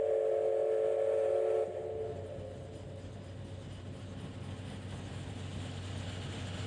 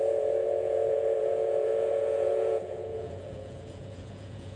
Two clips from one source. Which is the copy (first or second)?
second